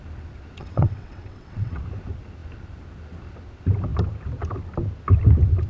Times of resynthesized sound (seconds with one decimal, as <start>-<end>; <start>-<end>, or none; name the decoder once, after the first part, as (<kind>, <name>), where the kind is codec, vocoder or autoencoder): 0.6-1.8 (vocoder, WaveNeXt)